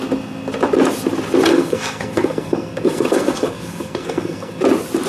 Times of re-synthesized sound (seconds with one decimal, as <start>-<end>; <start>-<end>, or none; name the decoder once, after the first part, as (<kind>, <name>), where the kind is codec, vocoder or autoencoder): 1.5-4.6 (codec, SNAC)